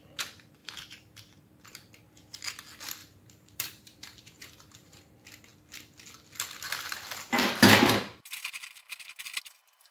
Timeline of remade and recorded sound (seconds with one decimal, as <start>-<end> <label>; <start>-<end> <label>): 0.0-0.6 recorded; 0.6-1.9 remade; 1.9-3.0 recorded; 3.0-5.0 remade; 5.0-9.9 recorded